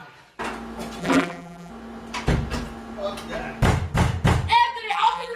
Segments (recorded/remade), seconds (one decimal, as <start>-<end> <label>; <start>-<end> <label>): 0.0-1.0 recorded; 1.0-1.7 remade; 1.7-4.9 recorded; 4.9-5.4 remade